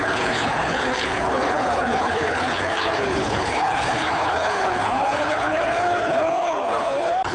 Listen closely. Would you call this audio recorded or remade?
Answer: remade